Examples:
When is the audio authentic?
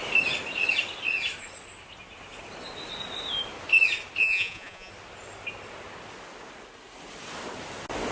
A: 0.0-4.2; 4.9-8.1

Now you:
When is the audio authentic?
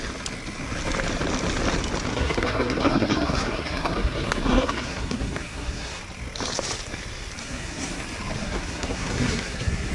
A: 0.0-2.1; 6.0-7.4; 8.0-8.4